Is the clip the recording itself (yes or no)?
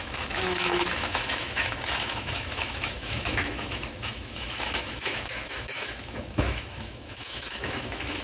no